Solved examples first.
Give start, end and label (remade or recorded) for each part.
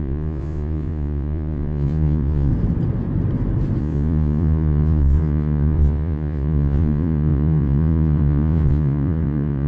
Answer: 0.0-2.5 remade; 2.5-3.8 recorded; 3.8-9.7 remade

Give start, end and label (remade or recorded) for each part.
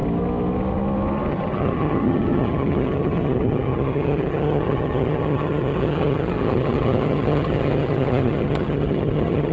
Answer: 0.0-1.3 recorded; 1.3-9.5 remade